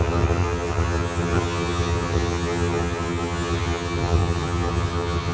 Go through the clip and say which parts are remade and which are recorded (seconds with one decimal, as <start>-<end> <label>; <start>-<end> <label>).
0.0-5.3 remade